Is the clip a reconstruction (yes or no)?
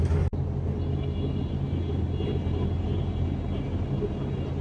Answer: no